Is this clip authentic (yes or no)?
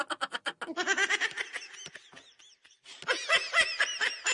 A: yes